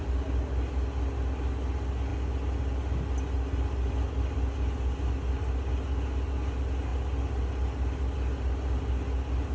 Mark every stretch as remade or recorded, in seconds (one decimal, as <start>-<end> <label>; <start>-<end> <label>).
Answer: 0.0-9.5 recorded